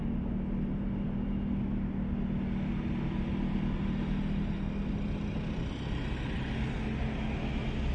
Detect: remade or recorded recorded